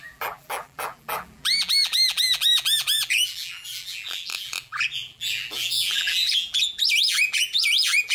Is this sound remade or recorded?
remade